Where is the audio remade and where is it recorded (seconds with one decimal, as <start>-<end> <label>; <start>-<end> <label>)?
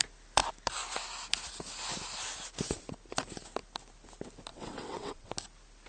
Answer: 0.0-4.5 recorded; 4.5-5.3 remade; 5.3-5.9 recorded